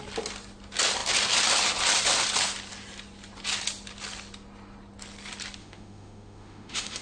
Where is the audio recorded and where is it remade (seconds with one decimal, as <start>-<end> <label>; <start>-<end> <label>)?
0.0-5.6 recorded; 5.6-7.0 remade